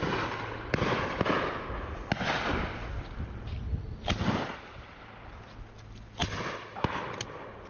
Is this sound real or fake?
real